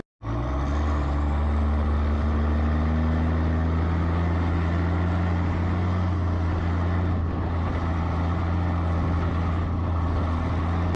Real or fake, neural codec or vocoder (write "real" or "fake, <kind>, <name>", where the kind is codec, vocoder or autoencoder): real